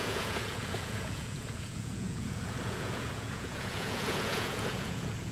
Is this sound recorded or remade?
remade